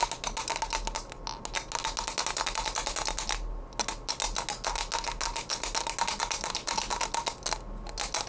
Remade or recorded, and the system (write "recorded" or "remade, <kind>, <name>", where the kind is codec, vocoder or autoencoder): recorded